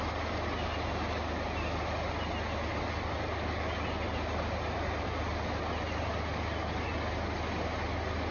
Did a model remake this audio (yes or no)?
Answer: no